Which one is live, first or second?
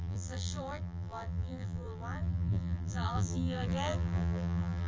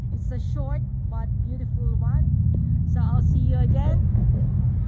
second